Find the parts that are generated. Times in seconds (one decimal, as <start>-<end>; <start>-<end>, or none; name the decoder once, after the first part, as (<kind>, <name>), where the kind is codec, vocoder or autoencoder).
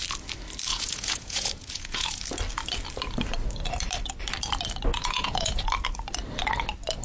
0.7-2.2 (vocoder, Vocos); 4.9-5.6